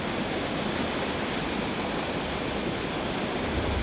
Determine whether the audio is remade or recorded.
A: recorded